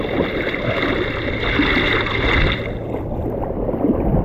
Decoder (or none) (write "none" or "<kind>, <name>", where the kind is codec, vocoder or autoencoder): none